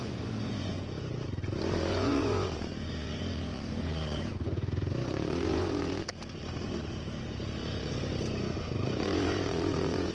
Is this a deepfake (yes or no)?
yes